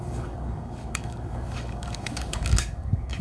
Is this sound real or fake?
fake